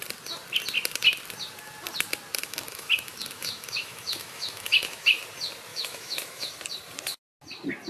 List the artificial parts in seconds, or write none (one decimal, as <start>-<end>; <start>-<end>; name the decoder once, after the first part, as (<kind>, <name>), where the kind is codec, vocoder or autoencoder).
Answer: 2.4-5.2 (autoencoder, DAC-VAE); 5.7-6.5